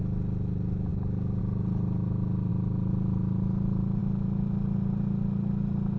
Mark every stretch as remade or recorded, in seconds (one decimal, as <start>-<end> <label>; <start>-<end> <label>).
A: 0.0-6.0 recorded